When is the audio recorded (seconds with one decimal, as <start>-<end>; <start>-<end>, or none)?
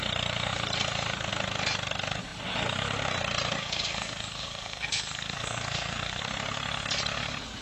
0.0-3.6; 6.2-7.6